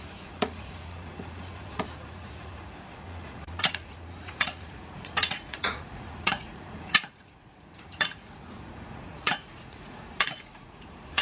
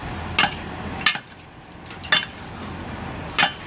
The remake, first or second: first